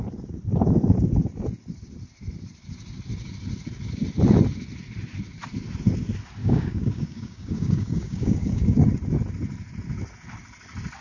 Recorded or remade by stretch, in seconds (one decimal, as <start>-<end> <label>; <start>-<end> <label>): 0.0-6.4 recorded; 6.4-8.9 remade; 8.9-11.0 recorded